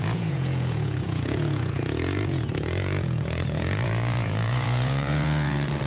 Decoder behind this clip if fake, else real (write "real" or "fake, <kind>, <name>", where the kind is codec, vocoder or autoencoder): fake, vocoder, Vocos